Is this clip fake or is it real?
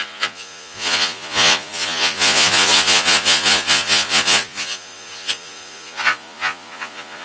fake